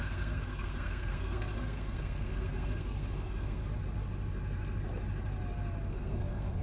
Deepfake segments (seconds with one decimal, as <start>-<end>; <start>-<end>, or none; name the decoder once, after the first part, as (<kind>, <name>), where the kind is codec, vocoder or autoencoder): 0.0-3.6 (codec, SNAC); 5.9-6.6